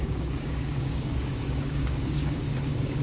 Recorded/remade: remade